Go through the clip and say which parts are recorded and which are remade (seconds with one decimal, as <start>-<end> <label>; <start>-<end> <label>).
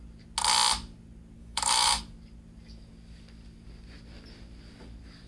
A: 0.0-1.4 recorded; 1.4-2.0 remade; 2.0-5.3 recorded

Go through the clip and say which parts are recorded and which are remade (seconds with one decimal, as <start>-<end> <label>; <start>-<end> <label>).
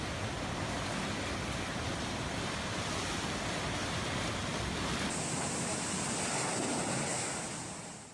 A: 0.0-4.5 recorded; 4.5-6.1 remade; 6.1-8.1 recorded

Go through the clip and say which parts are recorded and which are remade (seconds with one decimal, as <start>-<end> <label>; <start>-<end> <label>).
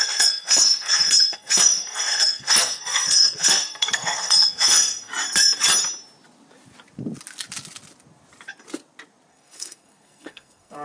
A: 0.0-5.1 remade; 5.1-9.3 recorded; 9.3-10.8 remade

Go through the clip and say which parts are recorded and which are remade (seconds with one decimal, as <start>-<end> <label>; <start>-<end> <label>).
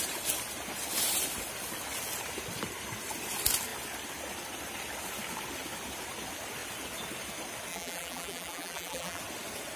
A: 0.0-7.7 recorded; 7.7-9.2 remade; 9.2-9.8 recorded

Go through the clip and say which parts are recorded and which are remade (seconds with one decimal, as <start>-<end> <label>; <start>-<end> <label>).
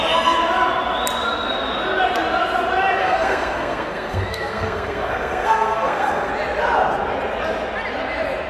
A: 0.0-3.0 recorded; 3.0-6.3 remade; 6.3-8.5 recorded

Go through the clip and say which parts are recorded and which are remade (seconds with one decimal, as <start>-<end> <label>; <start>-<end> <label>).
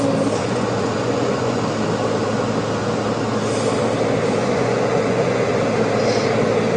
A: 0.0-0.4 recorded; 0.4-1.6 remade; 1.6-4.4 recorded; 4.4-5.6 remade; 5.6-6.8 recorded